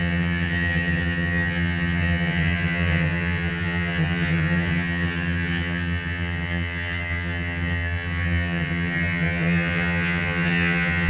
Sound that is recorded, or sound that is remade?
remade